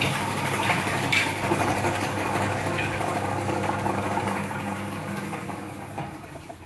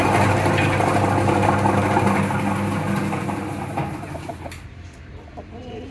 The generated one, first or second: first